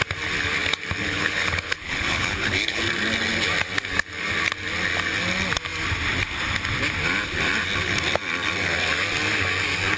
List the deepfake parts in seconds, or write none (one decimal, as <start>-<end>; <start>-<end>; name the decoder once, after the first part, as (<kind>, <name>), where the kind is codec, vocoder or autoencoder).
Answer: 1.0-2.8 (codec, HILCodec)